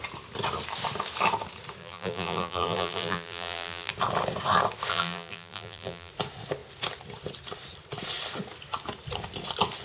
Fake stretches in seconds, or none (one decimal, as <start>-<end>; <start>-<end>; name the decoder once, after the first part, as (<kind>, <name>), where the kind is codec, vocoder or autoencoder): 1.8-3.9 (vocoder, BigVGAN v2); 4.9-6.1